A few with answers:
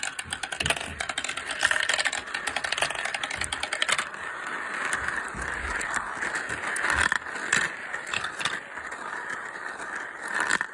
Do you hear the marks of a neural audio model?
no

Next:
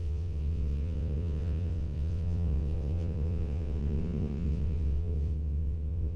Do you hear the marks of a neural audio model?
yes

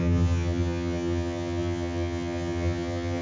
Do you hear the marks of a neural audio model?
yes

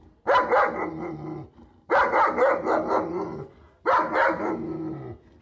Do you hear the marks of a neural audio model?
no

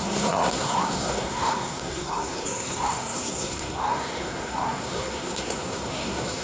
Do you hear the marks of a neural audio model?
yes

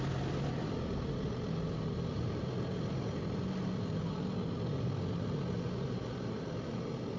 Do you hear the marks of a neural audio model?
no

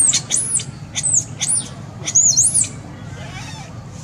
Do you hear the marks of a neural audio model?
no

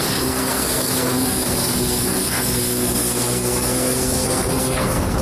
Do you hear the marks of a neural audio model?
yes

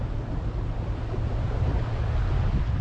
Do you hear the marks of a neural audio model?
no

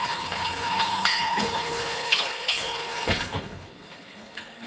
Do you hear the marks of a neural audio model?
yes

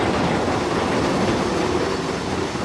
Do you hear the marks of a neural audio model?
no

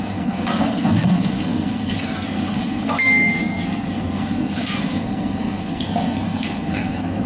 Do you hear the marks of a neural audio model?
yes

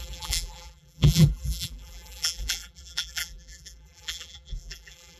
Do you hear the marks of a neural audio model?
yes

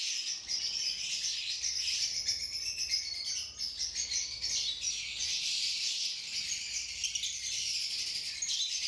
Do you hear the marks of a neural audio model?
no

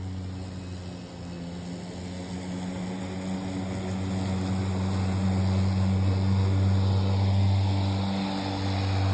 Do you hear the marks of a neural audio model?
no